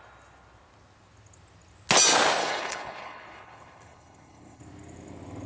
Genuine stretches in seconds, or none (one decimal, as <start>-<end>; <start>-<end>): 0.0-2.4; 4.6-5.5